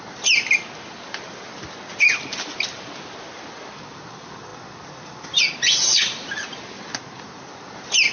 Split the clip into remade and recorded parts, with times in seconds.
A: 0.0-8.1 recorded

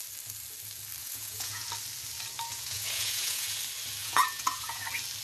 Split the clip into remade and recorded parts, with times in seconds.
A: 0.0-1.0 recorded; 1.0-1.7 remade; 1.7-2.5 recorded; 2.5-3.6 remade; 3.6-4.0 recorded; 4.0-4.8 remade; 4.8-5.2 recorded